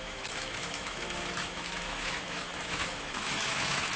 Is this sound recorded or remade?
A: remade